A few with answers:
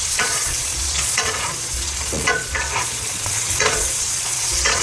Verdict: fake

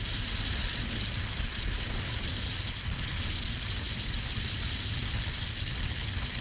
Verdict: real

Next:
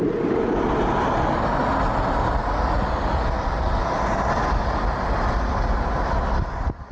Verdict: real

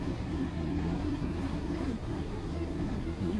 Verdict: fake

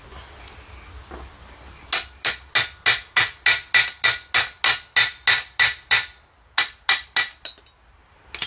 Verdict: real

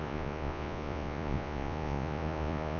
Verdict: fake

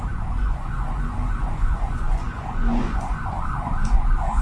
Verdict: fake